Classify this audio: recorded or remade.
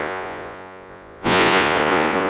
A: remade